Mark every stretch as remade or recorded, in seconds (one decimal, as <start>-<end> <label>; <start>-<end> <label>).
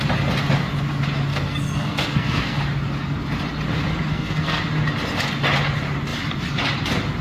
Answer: 0.0-1.3 recorded; 1.3-2.6 remade; 2.6-4.1 recorded; 4.1-4.6 remade; 4.6-7.2 recorded